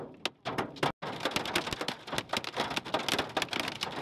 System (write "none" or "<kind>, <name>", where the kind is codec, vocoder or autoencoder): none